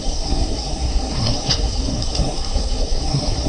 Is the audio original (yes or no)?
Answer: no